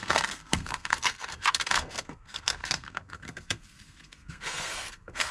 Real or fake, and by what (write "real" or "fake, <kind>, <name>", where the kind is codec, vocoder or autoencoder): fake, codec, SNAC